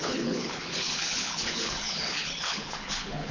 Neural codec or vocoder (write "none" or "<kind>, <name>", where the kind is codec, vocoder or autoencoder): codec, HILCodec